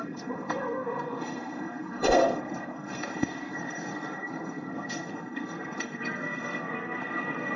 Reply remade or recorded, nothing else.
remade